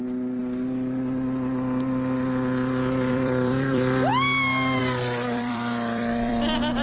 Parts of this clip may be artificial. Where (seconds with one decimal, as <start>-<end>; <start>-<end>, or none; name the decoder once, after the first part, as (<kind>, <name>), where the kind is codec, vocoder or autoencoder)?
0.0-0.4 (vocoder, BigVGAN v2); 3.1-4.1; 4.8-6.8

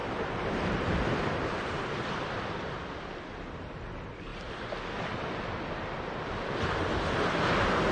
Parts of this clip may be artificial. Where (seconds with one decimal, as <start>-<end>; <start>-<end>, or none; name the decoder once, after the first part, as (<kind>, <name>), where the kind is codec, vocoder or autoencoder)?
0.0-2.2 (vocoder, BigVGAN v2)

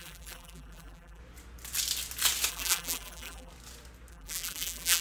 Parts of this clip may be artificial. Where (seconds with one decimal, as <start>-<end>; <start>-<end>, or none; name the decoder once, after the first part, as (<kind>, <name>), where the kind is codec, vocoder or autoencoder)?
0.0-1.2 (vocoder, BigVGAN v2); 2.5-3.5; 4.1-5.0

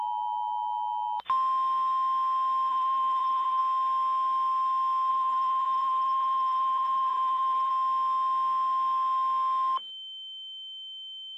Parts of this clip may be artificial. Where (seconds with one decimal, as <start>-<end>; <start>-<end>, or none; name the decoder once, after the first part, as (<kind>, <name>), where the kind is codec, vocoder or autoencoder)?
2.7-3.6 (vocoder, BigVGAN v2); 5.1-7.7

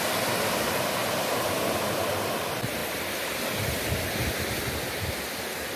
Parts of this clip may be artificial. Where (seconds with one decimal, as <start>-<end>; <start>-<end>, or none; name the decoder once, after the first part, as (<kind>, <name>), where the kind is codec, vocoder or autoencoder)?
1.0-2.1 (vocoder, BigVGAN v2); 2.8-3.4

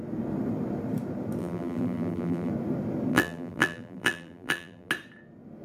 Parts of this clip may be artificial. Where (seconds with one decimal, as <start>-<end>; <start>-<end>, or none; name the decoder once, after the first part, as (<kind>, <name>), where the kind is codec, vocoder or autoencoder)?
1.4-2.5 (vocoder, BigVGAN v2); 3.1-4.9

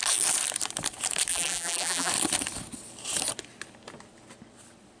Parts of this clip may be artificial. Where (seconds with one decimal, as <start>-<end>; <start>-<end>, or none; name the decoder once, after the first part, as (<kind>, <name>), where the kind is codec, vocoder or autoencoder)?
1.3-2.1 (vocoder, BigVGAN v2)